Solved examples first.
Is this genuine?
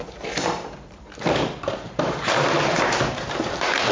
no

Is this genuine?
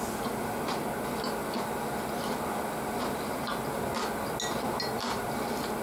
yes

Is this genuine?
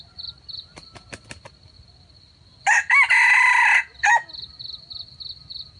yes